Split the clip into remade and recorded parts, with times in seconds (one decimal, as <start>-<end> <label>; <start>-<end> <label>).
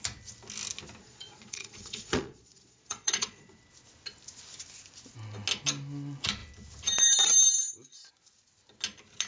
0.0-1.0 recorded; 1.0-3.6 remade; 3.6-9.3 recorded